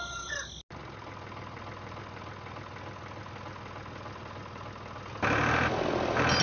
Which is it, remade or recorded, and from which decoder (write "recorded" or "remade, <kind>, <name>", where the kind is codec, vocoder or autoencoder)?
recorded